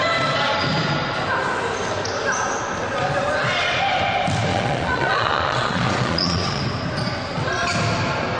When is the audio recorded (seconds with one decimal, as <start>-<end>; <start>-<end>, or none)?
0.0-4.5; 6.6-8.4